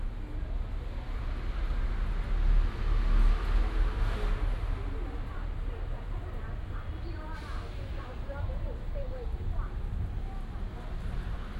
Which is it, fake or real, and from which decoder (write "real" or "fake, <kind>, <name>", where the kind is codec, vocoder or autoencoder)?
real